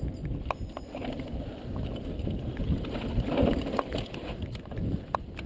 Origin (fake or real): real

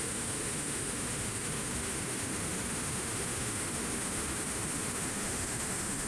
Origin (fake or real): fake